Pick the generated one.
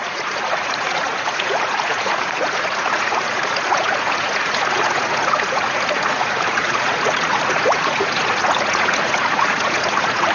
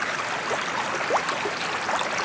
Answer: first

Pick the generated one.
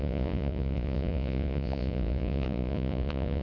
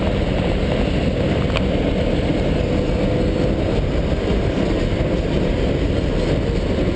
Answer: first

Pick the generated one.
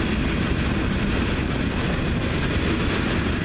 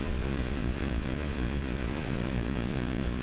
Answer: second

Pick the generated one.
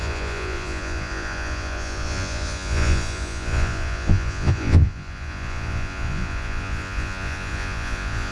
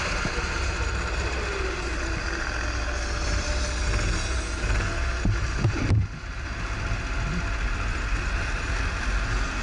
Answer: first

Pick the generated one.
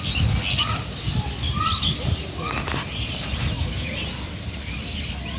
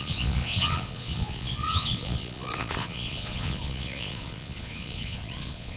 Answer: second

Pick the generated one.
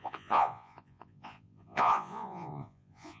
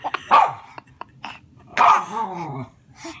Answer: first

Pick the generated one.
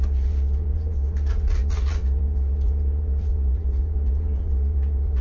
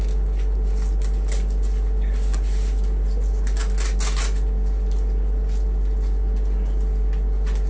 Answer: first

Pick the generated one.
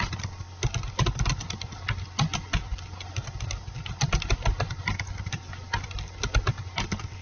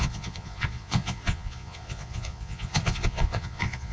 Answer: second